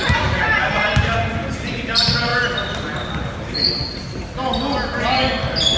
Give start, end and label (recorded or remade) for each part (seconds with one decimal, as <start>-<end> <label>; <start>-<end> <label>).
0.0-5.8 recorded